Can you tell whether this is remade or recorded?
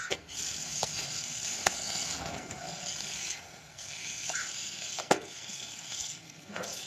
remade